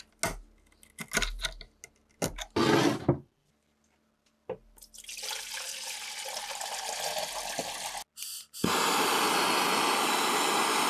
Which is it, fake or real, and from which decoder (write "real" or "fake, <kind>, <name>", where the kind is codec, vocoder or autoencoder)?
real